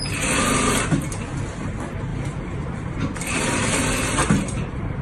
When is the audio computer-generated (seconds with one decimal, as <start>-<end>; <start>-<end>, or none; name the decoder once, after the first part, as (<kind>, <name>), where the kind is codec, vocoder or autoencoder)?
2.1-3.8 (vocoder, BigVGAN v2); 4.2-5.0